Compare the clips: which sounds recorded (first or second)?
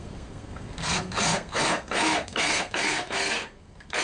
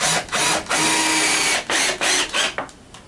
second